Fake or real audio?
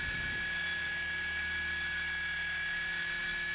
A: fake